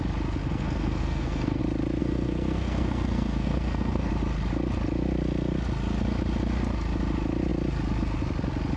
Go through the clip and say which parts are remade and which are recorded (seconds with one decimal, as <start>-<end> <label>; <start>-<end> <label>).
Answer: 0.0-0.4 recorded; 0.4-1.6 remade; 1.6-2.0 recorded; 2.0-4.1 remade; 4.1-8.8 recorded